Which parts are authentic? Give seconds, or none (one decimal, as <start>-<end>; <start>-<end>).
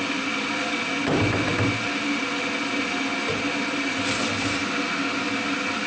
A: 0.0-5.9